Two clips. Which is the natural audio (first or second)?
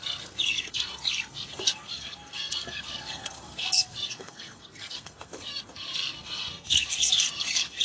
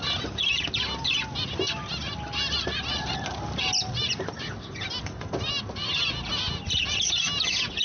second